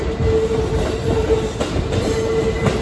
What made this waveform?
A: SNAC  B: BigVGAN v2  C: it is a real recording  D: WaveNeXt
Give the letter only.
C